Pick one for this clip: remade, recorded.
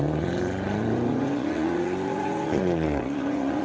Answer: remade